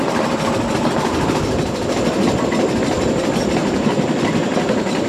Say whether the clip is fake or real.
real